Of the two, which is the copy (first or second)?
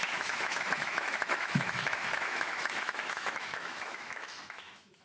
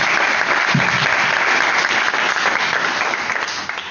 first